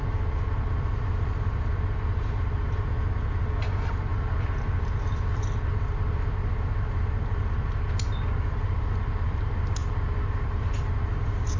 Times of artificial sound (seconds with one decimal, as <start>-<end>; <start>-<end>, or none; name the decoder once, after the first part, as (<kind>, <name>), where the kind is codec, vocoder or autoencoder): none